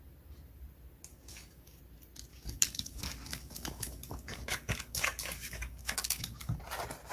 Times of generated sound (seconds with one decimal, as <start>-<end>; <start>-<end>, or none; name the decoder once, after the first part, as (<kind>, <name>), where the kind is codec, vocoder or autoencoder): 1.1-1.8 (codec, DAC); 2.3-6.6